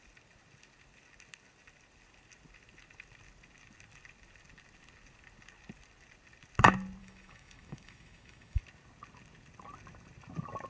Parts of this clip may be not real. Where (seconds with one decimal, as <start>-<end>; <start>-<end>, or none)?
7.0-8.6